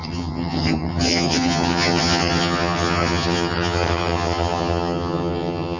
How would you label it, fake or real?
fake